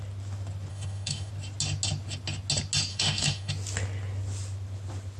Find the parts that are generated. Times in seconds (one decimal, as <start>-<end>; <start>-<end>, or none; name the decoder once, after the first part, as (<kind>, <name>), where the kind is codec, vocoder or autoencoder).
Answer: 0.7-1.3 (autoencoder, DAC-VAE); 2.9-3.5